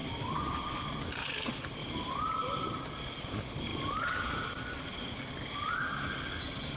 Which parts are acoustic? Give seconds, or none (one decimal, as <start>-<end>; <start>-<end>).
0.0-6.8